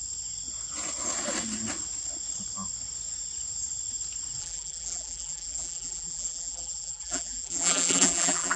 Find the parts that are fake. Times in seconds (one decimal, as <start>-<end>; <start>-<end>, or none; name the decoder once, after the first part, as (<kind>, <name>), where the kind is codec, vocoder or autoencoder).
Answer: 4.4-8.6 (vocoder, BigVGAN v2)